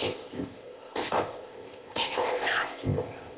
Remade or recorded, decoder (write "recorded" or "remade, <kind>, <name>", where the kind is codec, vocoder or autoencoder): remade, codec, ZipCodec